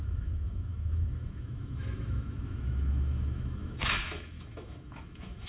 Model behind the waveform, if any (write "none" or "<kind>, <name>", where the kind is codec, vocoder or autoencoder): autoencoder, DAC-VAE